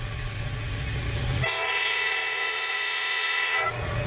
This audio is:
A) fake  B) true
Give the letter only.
A